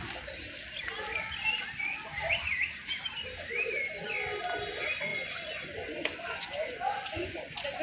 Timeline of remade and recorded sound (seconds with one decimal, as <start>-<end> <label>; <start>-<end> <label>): 0.0-5.1 recorded; 5.1-7.8 remade